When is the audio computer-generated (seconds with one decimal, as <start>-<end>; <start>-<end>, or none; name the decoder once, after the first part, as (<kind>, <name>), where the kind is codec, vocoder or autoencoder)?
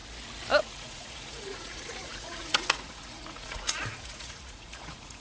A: 0.6-5.2 (vocoder, Vocos)